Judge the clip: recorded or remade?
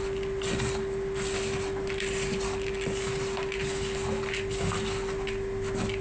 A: recorded